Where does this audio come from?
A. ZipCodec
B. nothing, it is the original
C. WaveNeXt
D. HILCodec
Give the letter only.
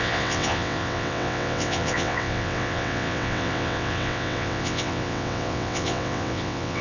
C